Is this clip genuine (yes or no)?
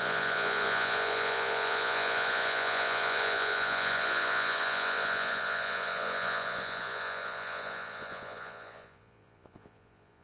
no